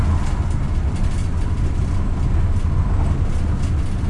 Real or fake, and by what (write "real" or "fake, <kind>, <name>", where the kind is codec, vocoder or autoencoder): real